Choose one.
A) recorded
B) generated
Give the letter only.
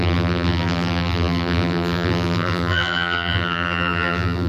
B